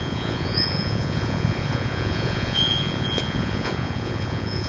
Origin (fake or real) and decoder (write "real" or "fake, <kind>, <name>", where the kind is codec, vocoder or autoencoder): fake, vocoder, Vocos